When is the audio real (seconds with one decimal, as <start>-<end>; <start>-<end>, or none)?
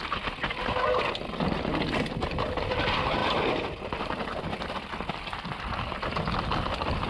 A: 0.0-3.2; 6.3-7.1